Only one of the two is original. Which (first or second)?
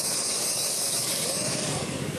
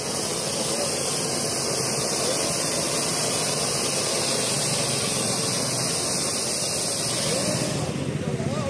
second